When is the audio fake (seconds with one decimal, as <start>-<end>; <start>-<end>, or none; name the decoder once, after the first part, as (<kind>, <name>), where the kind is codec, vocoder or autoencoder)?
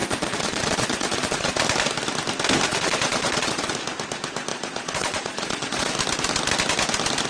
0.0-1.6 (vocoder, Vocos); 2.7-3.7; 4.5-5.9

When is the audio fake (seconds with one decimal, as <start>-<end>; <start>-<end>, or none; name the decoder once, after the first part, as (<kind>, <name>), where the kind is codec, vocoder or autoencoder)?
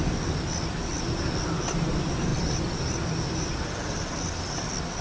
none